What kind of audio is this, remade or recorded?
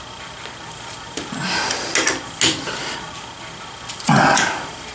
recorded